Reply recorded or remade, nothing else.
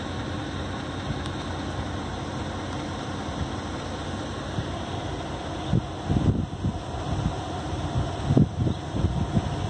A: recorded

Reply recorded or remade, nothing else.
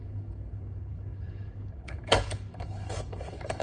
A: remade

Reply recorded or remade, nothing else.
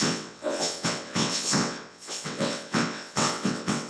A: remade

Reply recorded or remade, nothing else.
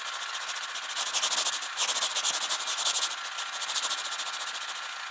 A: recorded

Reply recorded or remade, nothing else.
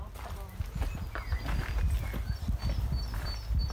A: recorded